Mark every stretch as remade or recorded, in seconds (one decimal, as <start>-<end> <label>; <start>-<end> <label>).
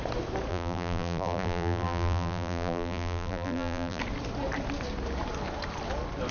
0.0-0.5 recorded; 0.5-4.0 remade; 4.0-6.3 recorded